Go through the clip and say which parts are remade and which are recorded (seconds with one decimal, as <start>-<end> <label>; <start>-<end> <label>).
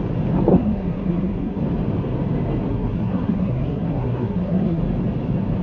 0.0-0.5 recorded; 0.5-1.6 remade; 1.6-2.7 recorded; 2.7-4.8 remade; 4.8-5.6 recorded